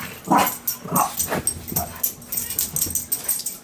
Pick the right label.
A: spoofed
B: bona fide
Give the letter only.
B